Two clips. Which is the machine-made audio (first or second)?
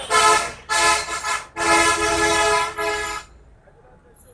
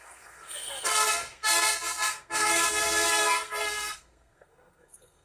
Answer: second